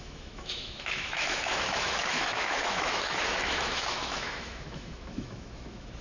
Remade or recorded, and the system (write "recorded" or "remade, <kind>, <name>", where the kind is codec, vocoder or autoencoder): remade, autoencoder, DAC-VAE